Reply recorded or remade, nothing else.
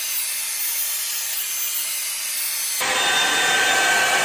recorded